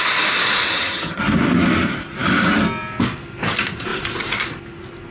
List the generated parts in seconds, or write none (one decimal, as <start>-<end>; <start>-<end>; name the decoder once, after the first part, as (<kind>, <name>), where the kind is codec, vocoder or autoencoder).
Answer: 0.7-1.2 (vocoder, HiFi-GAN)